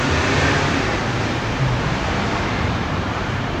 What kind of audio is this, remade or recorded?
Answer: remade